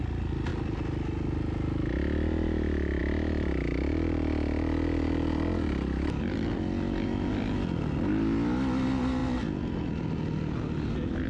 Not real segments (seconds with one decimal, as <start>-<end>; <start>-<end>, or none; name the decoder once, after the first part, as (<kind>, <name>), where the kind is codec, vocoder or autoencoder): none